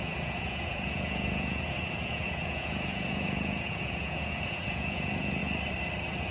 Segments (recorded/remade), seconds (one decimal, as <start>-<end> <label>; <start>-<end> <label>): 0.0-5.4 remade; 5.4-6.3 recorded